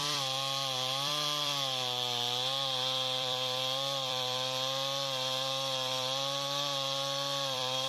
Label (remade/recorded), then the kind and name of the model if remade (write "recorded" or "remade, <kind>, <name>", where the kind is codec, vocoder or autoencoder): remade, vocoder, BigVGAN v2